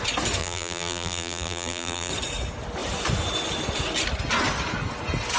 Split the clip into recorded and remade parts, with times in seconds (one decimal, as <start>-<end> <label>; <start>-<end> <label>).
0.0-0.4 recorded; 0.4-2.1 remade; 2.1-5.4 recorded